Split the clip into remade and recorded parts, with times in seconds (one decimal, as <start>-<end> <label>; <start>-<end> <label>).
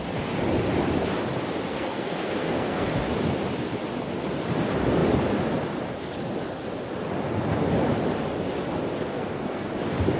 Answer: 0.0-1.7 recorded; 1.7-2.9 remade; 2.9-9.1 recorded; 9.1-9.7 remade; 9.7-10.2 recorded